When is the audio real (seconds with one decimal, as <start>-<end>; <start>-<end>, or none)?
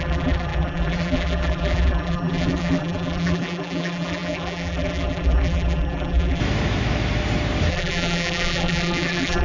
6.4-7.7